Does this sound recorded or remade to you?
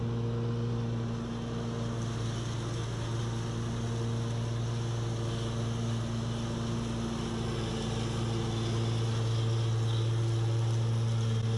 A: recorded